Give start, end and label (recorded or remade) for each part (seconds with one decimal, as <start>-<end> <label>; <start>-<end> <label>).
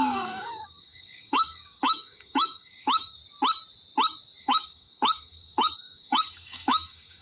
0.0-3.2 remade; 3.2-4.4 recorded; 4.4-7.2 remade